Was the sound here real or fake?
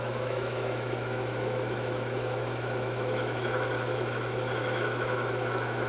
fake